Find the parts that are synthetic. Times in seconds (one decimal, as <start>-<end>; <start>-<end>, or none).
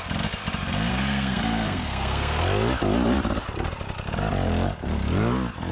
0.9-2.4